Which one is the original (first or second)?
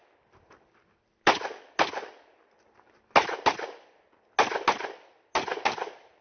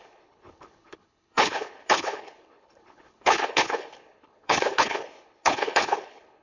first